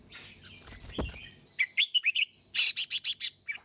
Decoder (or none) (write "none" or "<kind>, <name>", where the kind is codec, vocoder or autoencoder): none